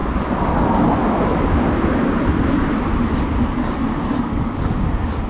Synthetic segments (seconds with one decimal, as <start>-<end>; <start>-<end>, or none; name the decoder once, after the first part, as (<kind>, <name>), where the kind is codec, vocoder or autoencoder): 0.0-5.3 (vocoder, BigVGAN v2)